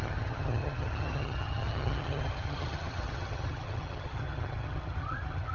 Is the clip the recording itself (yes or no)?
no